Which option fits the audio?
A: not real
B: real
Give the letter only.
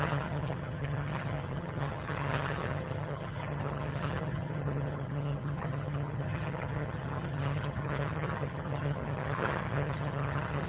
A